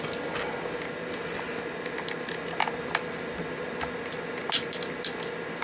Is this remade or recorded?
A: recorded